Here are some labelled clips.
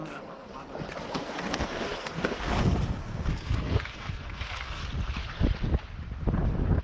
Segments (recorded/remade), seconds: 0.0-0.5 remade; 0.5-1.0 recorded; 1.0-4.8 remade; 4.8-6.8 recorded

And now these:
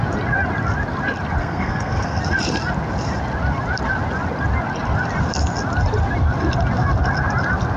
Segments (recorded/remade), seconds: 0.0-1.4 recorded; 1.4-2.2 remade; 2.2-7.8 recorded